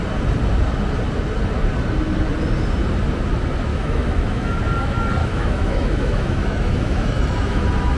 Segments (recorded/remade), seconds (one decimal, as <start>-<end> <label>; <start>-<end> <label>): 0.0-3.7 recorded; 3.7-4.6 remade; 4.6-5.2 recorded; 5.2-7.6 remade; 7.6-8.0 recorded